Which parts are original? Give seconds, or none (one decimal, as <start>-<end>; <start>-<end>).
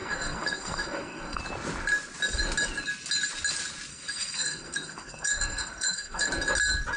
1.4-3.9; 6.3-7.0